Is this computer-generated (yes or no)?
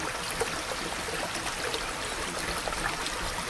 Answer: no